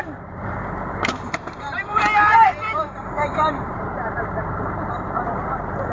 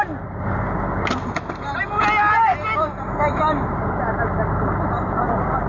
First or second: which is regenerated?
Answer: first